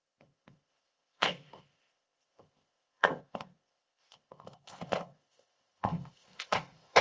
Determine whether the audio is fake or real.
fake